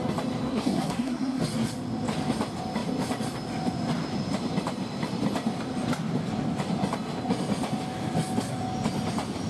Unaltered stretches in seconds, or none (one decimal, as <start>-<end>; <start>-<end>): 0.0-0.5; 1.4-9.5